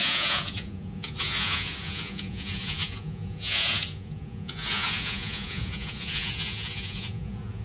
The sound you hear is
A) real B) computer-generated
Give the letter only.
B